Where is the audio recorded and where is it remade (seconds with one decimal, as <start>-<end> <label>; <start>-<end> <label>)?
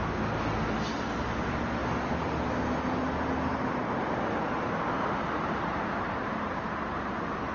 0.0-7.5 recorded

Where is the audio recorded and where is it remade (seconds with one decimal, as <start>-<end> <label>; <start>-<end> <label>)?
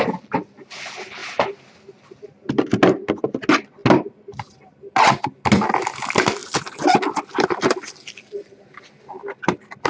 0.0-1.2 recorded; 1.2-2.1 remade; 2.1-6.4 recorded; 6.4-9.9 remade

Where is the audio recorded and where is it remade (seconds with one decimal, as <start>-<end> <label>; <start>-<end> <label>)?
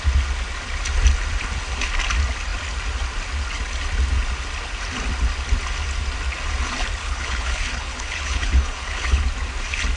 0.0-7.0 recorded; 7.0-9.2 remade; 9.2-10.0 recorded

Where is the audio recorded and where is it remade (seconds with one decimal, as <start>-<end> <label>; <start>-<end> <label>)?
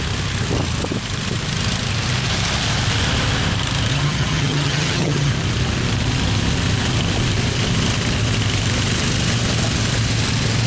0.0-3.9 recorded; 3.9-5.3 remade; 5.3-10.7 recorded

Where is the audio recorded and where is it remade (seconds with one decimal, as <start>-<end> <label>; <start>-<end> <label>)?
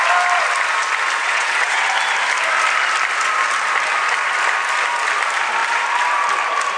0.0-1.2 recorded; 1.2-1.9 remade; 1.9-6.8 recorded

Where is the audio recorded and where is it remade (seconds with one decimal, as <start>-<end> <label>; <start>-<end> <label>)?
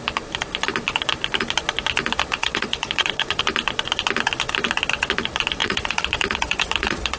0.0-2.4 recorded; 2.4-3.4 remade; 3.4-5.6 recorded; 5.6-7.2 remade